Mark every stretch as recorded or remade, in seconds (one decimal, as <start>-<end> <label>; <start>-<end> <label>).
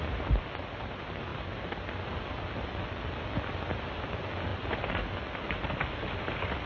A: 0.0-6.7 recorded